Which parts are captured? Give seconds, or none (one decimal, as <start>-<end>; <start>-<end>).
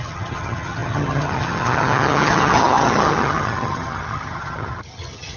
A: none